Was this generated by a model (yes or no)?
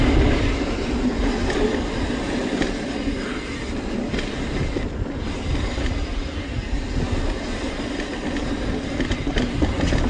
no